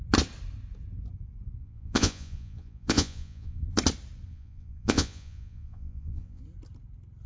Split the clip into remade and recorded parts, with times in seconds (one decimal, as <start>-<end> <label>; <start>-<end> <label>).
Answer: 0.0-1.6 recorded; 1.6-3.6 remade; 3.6-4.3 recorded; 4.3-6.4 remade; 6.4-7.3 recorded